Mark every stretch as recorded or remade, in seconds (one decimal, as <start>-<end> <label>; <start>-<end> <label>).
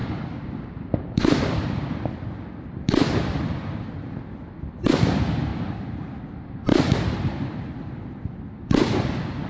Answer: 0.0-1.4 remade; 1.4-6.7 recorded; 6.7-7.7 remade; 7.7-9.5 recorded